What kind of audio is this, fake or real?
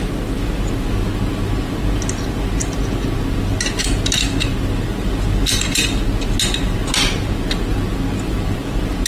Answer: real